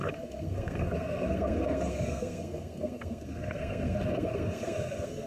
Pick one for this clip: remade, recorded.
remade